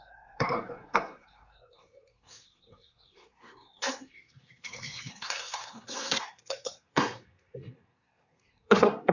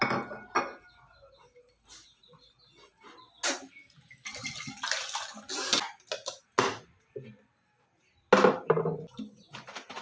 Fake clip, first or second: first